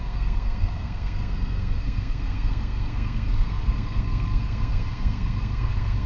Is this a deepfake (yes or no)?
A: yes